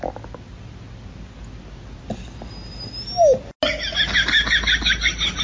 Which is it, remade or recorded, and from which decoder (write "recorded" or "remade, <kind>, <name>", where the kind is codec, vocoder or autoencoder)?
recorded